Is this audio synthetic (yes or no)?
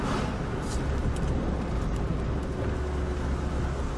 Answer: no